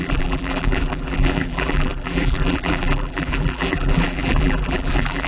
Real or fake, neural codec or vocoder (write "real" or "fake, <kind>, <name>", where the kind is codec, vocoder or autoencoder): fake, vocoder, BigVGAN v2